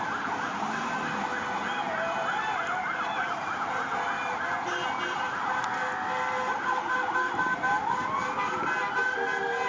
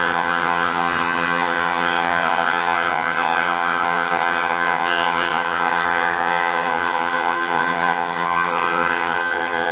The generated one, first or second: second